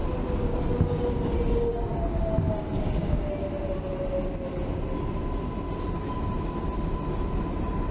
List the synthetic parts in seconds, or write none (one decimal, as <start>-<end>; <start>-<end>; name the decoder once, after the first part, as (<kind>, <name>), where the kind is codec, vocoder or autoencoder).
none

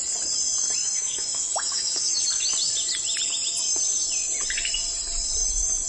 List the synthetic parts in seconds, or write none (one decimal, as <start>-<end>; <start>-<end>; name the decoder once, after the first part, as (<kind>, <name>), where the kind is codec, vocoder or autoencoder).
0.8-2.2 (autoencoder, DAC-VAE)

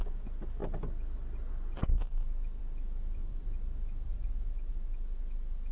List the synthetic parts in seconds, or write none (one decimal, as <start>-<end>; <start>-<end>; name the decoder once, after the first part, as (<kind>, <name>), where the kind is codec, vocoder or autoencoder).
3.2-4.5 (vocoder, BigVGAN v2)

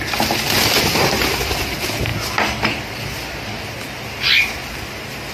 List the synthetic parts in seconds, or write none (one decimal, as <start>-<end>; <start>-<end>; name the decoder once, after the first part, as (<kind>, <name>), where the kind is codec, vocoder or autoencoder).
none

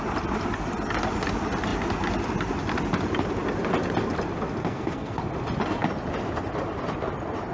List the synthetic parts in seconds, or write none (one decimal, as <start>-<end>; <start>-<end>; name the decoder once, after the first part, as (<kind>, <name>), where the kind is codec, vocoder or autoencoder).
4.6-5.2 (codec, SNAC)

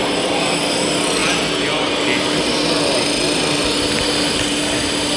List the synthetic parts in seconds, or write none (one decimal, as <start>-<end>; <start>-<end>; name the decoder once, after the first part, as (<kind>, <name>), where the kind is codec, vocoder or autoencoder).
none

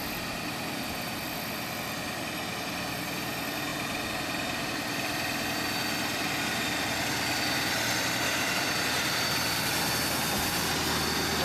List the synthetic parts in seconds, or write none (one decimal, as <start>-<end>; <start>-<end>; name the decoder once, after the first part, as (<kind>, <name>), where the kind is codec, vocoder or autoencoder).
none

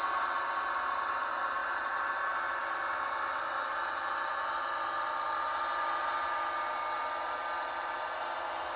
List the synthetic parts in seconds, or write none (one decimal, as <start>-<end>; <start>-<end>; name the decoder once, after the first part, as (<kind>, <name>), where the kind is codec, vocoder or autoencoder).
1.6-2.2 (vocoder, BigVGAN v2)